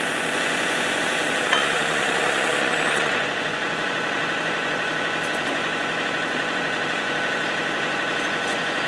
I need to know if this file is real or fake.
fake